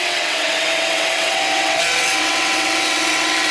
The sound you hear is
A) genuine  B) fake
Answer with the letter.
B